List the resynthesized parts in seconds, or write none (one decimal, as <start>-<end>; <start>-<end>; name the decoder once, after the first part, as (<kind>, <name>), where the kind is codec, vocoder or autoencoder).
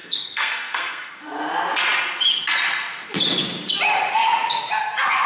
0.0-1.2 (codec, SNAC)